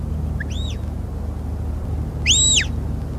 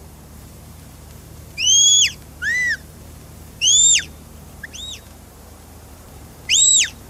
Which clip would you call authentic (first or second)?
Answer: first